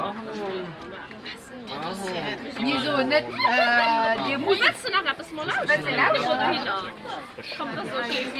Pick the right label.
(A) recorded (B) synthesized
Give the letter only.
A